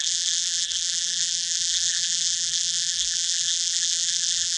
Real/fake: fake